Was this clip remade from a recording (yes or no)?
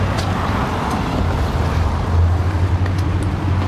no